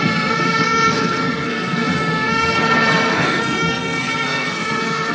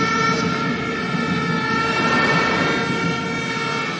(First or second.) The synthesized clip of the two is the first